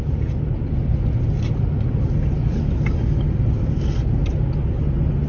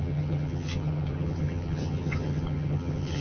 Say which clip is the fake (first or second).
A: second